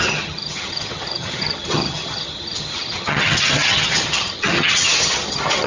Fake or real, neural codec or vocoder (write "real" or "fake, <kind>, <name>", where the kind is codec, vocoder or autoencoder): fake, vocoder, HiFi-GAN